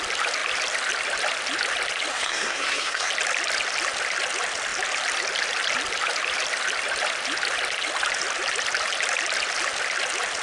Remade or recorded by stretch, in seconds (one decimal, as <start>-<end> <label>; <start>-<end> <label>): 0.0-2.1 recorded; 2.1-3.1 remade; 3.1-10.4 recorded